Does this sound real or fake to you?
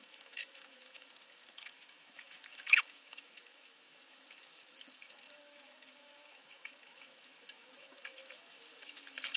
fake